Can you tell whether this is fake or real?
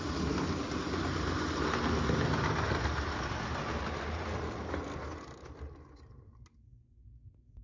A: real